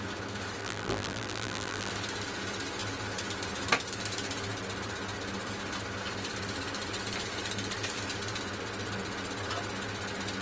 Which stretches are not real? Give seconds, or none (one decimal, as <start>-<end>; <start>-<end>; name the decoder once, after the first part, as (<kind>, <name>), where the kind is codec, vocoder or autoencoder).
0.6-1.9 (vocoder, BigVGAN v2)